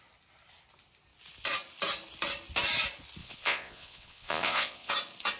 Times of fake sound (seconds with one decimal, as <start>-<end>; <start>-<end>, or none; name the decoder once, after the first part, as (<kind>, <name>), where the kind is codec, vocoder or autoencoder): 3.2-4.9 (vocoder, Vocos)